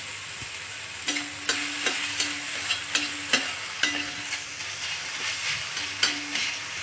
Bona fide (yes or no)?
yes